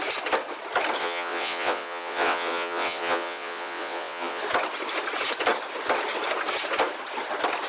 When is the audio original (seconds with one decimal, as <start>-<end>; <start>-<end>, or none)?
0.0-1.0; 4.4-7.7

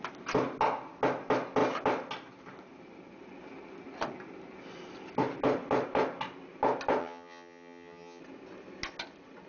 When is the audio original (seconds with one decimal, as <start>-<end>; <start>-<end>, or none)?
0.0-7.0; 8.2-9.5

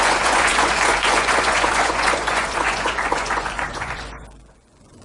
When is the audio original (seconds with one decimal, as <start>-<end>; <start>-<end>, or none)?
none

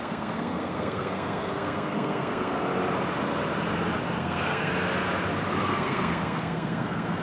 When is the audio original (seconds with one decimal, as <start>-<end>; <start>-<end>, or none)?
2.5-4.2; 4.7-5.6